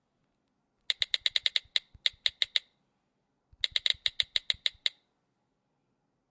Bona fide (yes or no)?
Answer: yes